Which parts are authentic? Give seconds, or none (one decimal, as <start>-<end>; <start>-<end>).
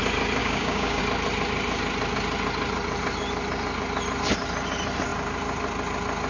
0.0-0.4; 1.0-6.3